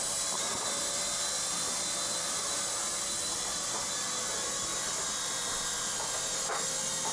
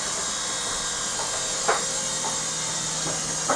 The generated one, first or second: first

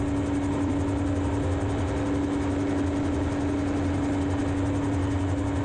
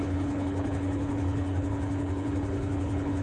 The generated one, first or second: second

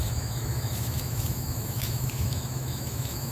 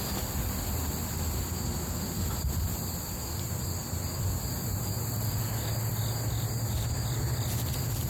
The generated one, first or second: first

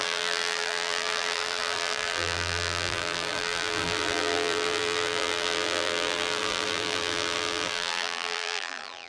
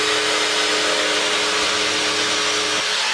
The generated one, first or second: first